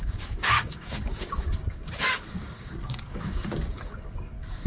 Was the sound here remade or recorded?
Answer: remade